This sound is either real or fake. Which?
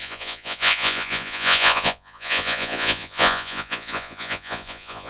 fake